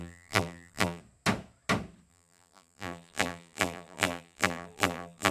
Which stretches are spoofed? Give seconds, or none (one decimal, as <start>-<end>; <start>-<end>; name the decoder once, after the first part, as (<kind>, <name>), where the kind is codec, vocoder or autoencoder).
0.0-1.0 (vocoder, BigVGAN v2); 2.1-5.3